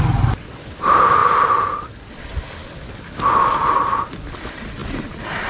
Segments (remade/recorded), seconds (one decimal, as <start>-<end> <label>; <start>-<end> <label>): 0.0-1.2 remade; 1.2-3.4 recorded; 3.4-5.5 remade